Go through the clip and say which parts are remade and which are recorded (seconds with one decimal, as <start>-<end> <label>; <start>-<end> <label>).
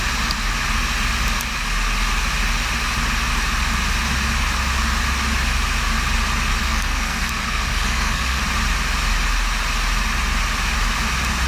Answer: 0.0-6.6 recorded; 6.6-8.4 remade; 8.4-11.5 recorded